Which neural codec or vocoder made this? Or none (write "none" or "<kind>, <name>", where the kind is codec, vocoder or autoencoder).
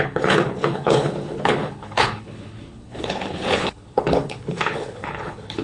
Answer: codec, HILCodec